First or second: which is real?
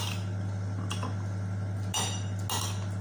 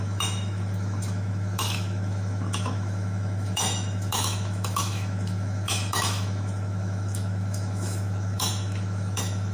first